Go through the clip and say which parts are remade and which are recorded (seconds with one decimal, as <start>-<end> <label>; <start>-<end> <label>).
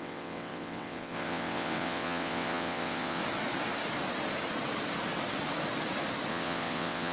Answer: 0.0-3.2 remade; 3.2-6.3 recorded; 6.3-7.1 remade